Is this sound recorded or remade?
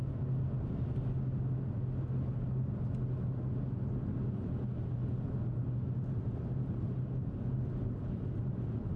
recorded